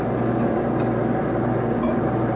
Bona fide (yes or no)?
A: yes